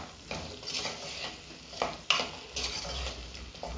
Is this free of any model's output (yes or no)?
yes